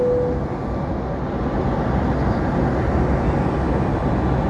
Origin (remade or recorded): recorded